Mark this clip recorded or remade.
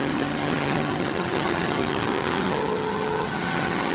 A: remade